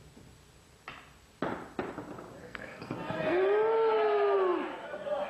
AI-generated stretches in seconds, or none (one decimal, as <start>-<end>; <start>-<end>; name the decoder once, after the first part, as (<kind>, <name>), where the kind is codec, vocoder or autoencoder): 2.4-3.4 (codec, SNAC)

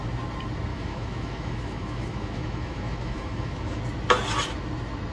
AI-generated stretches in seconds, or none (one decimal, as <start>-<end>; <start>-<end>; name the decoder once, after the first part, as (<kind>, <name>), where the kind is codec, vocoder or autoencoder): 0.7-3.8 (autoencoder, DAC-VAE)

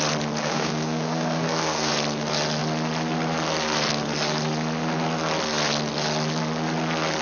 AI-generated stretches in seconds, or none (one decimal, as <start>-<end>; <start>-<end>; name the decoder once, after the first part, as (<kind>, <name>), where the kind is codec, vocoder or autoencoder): 0.4-1.9 (codec, SNAC)